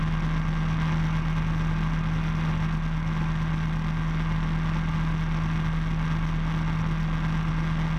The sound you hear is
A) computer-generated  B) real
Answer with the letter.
B